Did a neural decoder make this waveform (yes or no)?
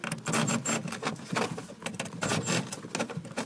no